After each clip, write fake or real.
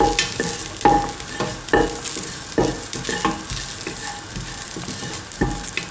real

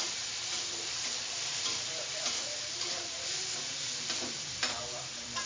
fake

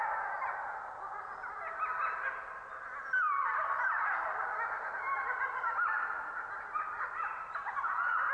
real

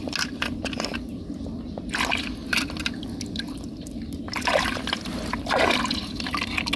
real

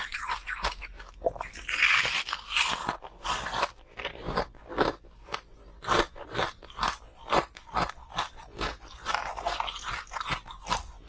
real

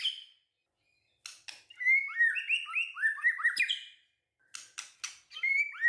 real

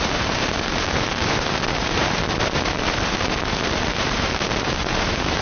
fake